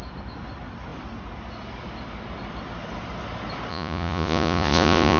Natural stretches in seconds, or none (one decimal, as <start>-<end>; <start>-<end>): 0.0-3.7